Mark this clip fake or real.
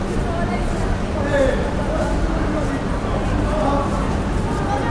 real